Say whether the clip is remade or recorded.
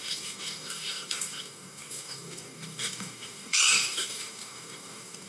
remade